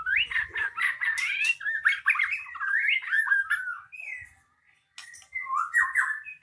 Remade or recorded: recorded